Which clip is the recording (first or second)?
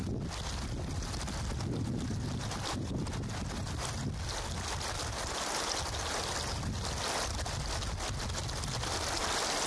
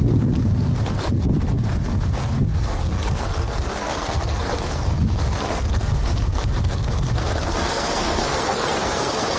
first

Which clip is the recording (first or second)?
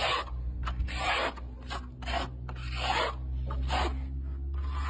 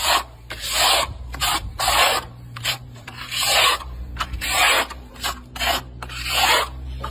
first